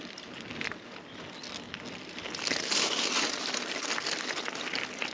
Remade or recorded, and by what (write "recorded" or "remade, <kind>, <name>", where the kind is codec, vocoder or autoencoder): recorded